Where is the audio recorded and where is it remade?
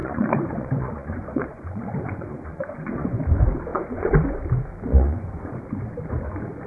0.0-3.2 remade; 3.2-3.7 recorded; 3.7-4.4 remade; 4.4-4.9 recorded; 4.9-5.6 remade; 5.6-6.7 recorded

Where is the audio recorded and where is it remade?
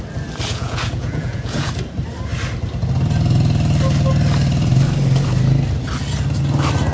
0.0-0.5 recorded; 0.5-1.7 remade; 1.7-6.9 recorded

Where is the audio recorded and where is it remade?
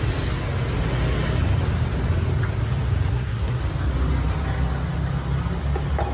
0.0-3.1 recorded; 3.1-3.6 remade; 3.6-6.1 recorded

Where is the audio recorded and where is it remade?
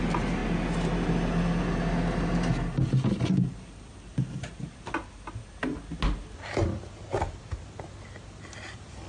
0.0-9.1 recorded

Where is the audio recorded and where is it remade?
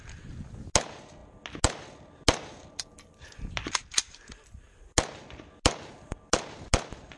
0.0-7.2 recorded